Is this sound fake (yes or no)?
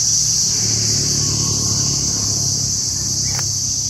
no